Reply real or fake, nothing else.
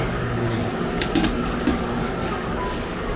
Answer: fake